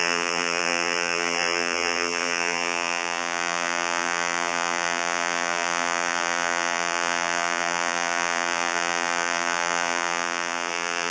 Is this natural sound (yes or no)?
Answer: no